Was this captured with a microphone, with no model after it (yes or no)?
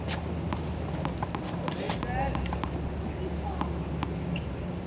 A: yes